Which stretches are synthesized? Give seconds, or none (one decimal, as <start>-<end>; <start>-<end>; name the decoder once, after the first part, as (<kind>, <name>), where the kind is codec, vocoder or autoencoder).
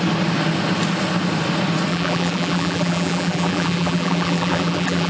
1.9-5.1 (vocoder, BigVGAN v2)